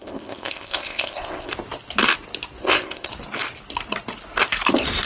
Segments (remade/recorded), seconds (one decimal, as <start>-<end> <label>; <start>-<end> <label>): 0.0-1.5 remade; 1.5-2.6 recorded; 2.6-3.1 remade; 3.1-5.1 recorded